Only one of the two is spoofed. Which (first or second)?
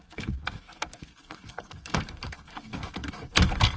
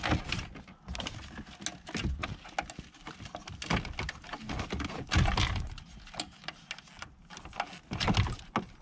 first